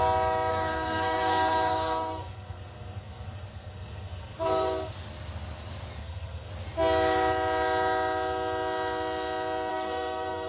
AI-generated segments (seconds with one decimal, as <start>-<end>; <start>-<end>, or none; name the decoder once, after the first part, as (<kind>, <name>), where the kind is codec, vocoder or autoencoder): 0.5-4.9 (codec, SNAC); 6.0-6.5; 9.7-10.5